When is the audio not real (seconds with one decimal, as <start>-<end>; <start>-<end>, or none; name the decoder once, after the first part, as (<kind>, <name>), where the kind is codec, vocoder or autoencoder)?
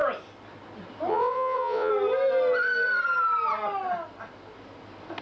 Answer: 1.1-1.9 (vocoder, WaveNeXt)